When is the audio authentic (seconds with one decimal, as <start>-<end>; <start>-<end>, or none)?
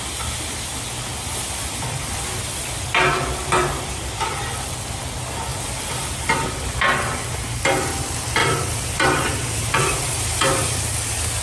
0.0-3.6; 4.4-8.4; 10.8-11.4